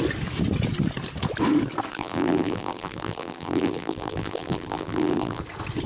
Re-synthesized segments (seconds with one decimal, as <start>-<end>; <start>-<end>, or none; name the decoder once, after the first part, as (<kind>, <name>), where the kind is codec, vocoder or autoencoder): 1.9-5.4 (vocoder, BigVGAN v2)